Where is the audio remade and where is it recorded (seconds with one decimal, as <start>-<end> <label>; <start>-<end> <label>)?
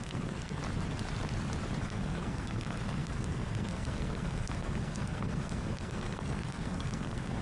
0.0-0.6 remade; 0.6-1.8 recorded; 1.8-7.4 remade